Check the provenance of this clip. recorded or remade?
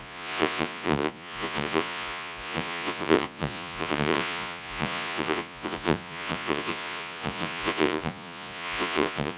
remade